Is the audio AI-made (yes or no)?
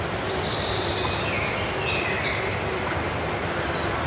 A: no